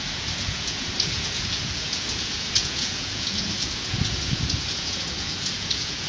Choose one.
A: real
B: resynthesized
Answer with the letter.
B